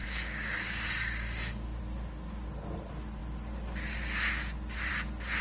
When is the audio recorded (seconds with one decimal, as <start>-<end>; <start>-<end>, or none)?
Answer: 1.8-5.4